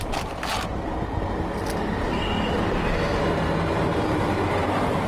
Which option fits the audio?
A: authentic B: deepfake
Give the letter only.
A